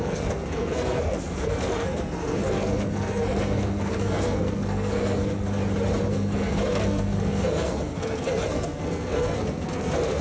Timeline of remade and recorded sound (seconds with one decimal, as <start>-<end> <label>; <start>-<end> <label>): 0.0-5.6 remade; 5.6-6.1 recorded; 6.1-10.2 remade